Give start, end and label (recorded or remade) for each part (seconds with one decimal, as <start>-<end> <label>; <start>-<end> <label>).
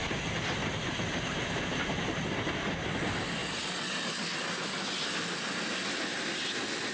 0.0-6.9 recorded